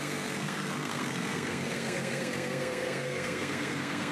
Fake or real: fake